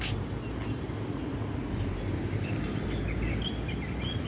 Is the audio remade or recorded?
recorded